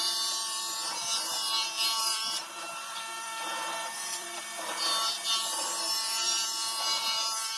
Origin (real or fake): fake